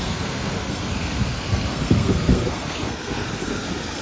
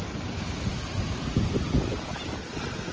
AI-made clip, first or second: first